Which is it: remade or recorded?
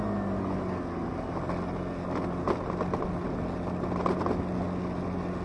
recorded